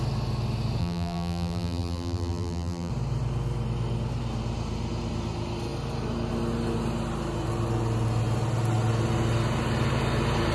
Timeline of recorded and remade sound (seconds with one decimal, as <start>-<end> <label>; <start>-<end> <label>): 0.0-0.8 recorded; 0.8-2.9 remade; 2.9-10.5 recorded